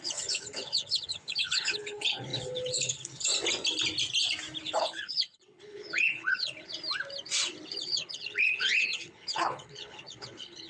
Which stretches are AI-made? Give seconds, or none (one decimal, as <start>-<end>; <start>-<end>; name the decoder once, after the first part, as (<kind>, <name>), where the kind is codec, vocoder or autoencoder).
0.0-3.3 (codec, HILCodec); 4.6-6.7; 7.8-10.7